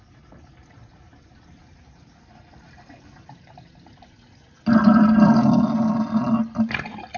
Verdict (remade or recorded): recorded